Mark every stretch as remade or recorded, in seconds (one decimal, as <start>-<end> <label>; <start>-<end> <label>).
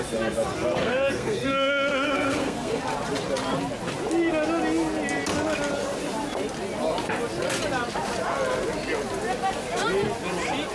0.0-0.8 recorded; 0.8-2.8 remade; 2.8-10.7 recorded